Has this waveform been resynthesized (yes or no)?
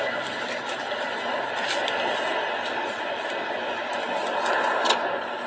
no